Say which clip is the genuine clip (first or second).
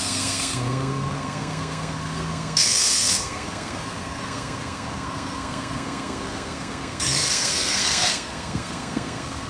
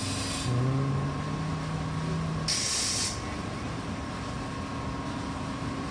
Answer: second